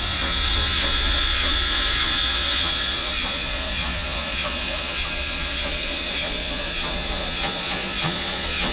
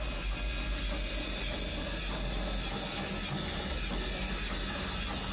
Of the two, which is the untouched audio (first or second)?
second